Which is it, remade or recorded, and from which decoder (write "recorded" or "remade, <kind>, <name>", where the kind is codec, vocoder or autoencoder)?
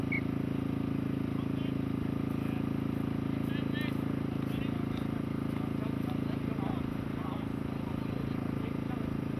recorded